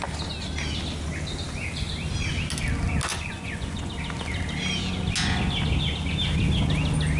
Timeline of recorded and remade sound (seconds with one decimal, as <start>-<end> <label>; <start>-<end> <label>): 0.0-3.1 recorded; 3.1-3.9 remade; 3.9-7.2 recorded

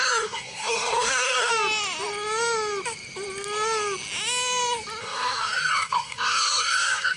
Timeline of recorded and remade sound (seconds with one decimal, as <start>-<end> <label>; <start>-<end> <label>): 0.0-1.5 remade; 1.5-5.0 recorded; 5.0-7.2 remade

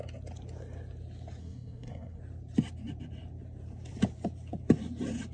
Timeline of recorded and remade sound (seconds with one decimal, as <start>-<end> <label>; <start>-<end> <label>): 0.0-1.4 recorded; 1.4-2.2 remade; 2.2-5.3 recorded

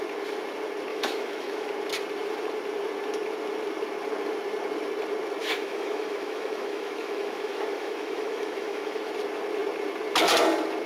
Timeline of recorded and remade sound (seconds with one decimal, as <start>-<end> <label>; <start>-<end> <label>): 0.0-0.9 recorded; 0.9-1.7 remade; 1.7-5.4 recorded; 5.4-9.1 remade; 9.1-10.9 recorded

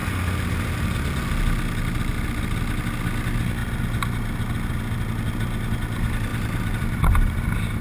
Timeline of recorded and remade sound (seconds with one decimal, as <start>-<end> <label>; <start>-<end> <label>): 0.0-6.3 recorded; 6.3-7.1 remade; 7.1-7.8 recorded

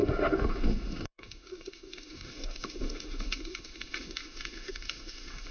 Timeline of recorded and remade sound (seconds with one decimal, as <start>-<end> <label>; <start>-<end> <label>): 0.0-5.5 remade

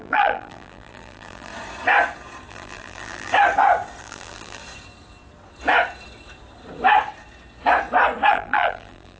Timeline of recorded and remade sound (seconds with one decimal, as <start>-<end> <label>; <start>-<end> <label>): 0.0-1.5 remade; 1.5-2.5 recorded; 2.5-3.3 remade; 3.3-4.0 recorded; 4.0-4.6 remade; 4.6-8.3 recorded; 8.3-9.2 remade

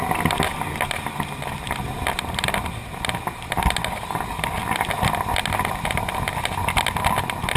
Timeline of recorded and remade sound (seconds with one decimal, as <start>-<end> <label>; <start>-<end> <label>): 0.0-7.6 recorded